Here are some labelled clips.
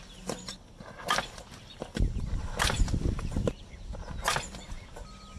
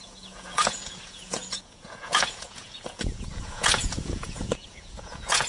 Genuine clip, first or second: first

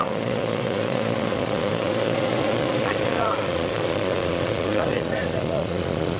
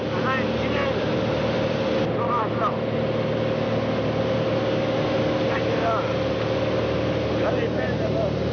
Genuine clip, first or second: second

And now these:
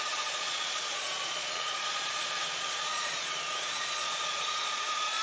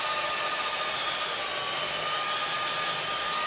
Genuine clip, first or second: second